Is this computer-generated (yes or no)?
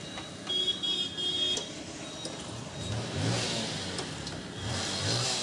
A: no